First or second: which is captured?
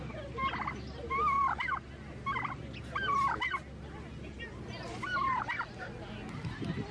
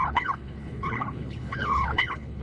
first